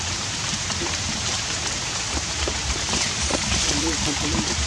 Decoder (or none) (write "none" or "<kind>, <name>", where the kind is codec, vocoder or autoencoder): vocoder, BigVGAN v2